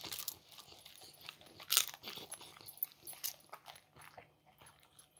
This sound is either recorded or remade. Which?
recorded